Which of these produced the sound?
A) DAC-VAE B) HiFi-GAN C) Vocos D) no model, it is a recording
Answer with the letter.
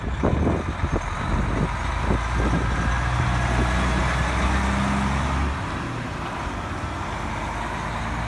D